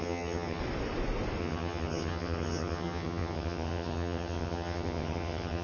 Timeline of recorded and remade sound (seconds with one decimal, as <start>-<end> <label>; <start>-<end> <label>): 0.0-0.6 remade; 0.6-1.4 recorded; 1.4-5.6 remade